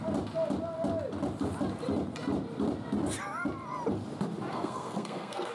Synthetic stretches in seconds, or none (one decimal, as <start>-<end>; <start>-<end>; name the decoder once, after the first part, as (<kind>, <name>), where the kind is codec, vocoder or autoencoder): 4.5-5.5 (codec, SNAC)